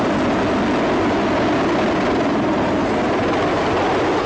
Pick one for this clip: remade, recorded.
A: recorded